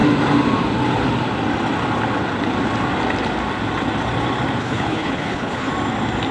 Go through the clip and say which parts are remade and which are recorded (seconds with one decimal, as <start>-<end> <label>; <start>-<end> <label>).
0.0-4.6 recorded; 4.6-5.7 remade; 5.7-6.3 recorded

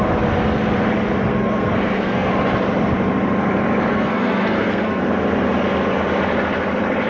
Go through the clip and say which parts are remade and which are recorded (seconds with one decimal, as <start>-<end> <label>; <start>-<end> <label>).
0.0-1.3 recorded; 1.3-2.3 remade; 2.3-3.9 recorded; 3.9-5.0 remade; 5.0-7.1 recorded

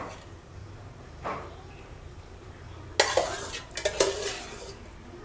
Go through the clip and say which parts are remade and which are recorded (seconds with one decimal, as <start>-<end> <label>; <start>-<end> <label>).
0.0-0.6 recorded; 0.6-2.9 remade; 2.9-5.2 recorded

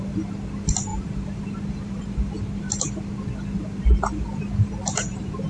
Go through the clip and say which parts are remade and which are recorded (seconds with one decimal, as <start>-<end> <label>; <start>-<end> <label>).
0.0-0.9 recorded; 0.9-1.4 remade; 1.4-5.5 recorded

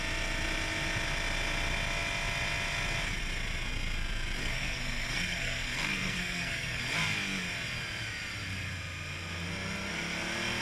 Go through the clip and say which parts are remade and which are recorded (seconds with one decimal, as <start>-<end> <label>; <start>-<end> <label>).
0.0-4.4 recorded; 4.4-6.8 remade; 6.8-10.6 recorded

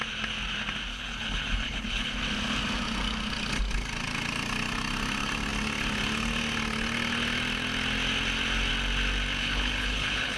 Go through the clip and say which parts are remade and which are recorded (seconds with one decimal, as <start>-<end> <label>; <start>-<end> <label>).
0.0-0.9 recorded; 0.9-2.1 remade; 2.1-9.4 recorded; 9.4-10.4 remade

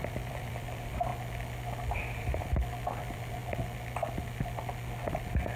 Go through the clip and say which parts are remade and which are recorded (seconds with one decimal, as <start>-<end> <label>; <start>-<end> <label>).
0.0-1.1 remade; 1.1-2.2 recorded; 2.2-3.4 remade; 3.4-5.6 recorded

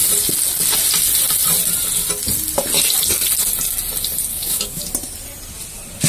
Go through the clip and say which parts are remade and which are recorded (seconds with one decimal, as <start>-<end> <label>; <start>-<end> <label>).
0.0-4.3 recorded; 4.3-4.8 remade; 4.8-6.1 recorded